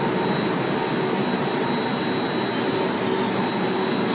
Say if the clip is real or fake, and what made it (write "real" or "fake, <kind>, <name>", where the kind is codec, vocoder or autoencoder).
real